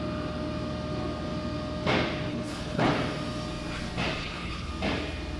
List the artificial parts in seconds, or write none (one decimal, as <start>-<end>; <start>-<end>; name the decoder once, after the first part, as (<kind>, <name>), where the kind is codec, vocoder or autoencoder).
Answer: 2.3-2.9 (codec, HILCodec); 4.2-4.7